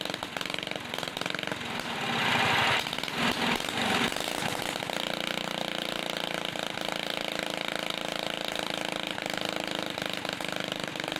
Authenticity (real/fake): real